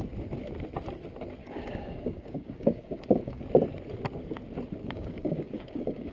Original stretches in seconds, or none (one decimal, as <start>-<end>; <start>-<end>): 0.0-1.4; 3.4-4.8